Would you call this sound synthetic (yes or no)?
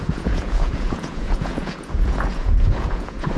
yes